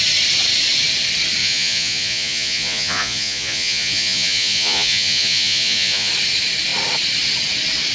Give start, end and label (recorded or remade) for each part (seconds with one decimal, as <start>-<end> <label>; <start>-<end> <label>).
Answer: 0.0-1.4 recorded; 1.4-6.1 remade; 6.1-7.9 recorded

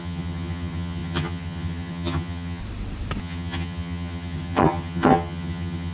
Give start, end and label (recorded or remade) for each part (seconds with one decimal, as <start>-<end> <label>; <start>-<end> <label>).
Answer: 0.0-2.6 remade; 2.6-3.2 recorded; 3.2-5.9 remade

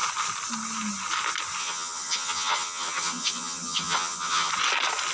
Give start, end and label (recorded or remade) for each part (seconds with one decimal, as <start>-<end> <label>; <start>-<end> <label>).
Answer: 0.0-1.6 recorded; 1.6-4.5 remade; 4.5-5.1 recorded

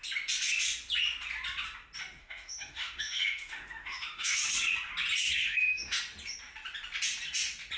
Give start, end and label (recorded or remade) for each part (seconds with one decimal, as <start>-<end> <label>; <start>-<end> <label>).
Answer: 0.0-2.2 recorded; 2.2-4.4 remade; 4.4-5.4 recorded; 5.4-6.0 remade; 6.0-7.8 recorded